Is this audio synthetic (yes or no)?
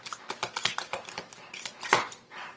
no